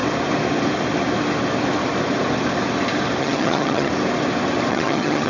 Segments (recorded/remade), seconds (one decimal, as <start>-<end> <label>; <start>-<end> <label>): 0.0-3.2 recorded; 3.2-3.9 remade; 3.9-4.7 recorded; 4.7-5.3 remade